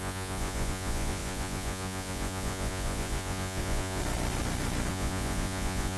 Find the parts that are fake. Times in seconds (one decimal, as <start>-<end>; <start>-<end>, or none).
0.0-4.0; 4.9-6.0